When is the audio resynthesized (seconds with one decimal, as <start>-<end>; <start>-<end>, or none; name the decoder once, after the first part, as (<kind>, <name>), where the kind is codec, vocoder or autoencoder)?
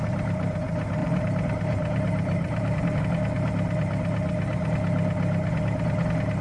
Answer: 1.0-3.0 (vocoder, BigVGAN v2)